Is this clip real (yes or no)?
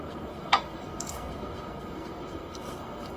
no